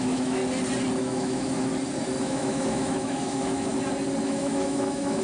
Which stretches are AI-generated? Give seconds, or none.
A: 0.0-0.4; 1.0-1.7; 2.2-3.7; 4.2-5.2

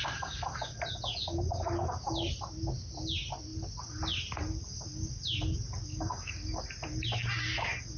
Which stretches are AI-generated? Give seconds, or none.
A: 5.9-6.6

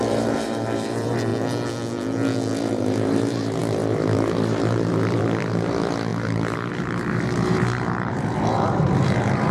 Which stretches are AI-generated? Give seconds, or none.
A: 0.0-1.3; 2.7-9.5

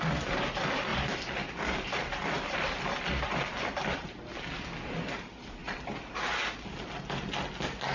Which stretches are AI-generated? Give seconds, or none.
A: none